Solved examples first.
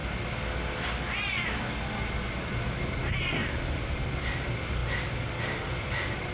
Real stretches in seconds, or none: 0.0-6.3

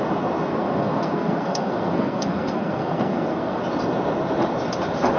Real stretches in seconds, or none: 0.0-0.5; 3.6-5.2

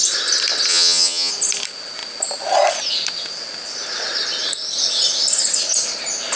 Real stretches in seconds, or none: 0.0-0.7; 1.3-6.4

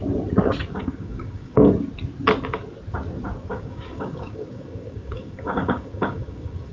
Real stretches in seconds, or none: 0.0-0.8; 1.7-3.5

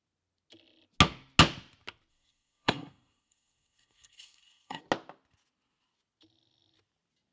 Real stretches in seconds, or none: 0.0-2.1; 4.8-7.3

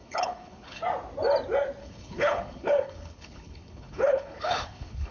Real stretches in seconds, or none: 0.8-1.8